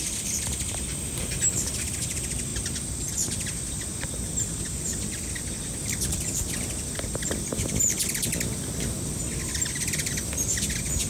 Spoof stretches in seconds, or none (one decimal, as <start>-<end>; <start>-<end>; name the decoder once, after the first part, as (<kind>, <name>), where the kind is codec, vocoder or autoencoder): none